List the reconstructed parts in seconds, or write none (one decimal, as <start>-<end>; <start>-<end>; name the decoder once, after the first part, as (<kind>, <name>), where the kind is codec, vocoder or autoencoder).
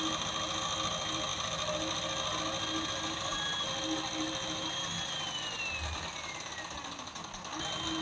none